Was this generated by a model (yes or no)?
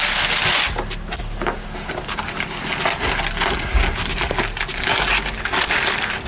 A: no